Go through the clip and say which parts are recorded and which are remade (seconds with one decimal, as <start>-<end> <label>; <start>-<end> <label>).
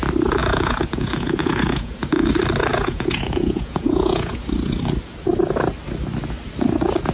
0.0-0.4 recorded; 0.4-2.3 remade; 2.3-2.7 recorded; 2.7-4.4 remade; 4.4-7.1 recorded